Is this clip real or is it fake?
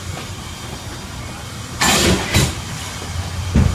fake